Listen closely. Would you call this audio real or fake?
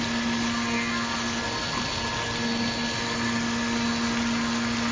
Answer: real